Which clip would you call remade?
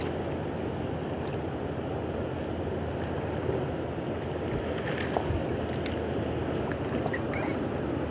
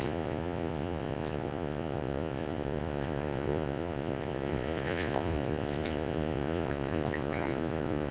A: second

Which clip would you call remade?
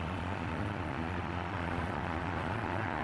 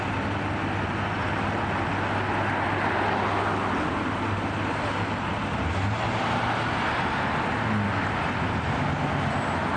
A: first